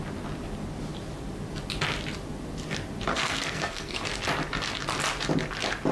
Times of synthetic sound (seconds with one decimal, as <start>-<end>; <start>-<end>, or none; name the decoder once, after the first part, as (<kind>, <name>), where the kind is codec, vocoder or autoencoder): 3.1-4.0 (codec, SNAC)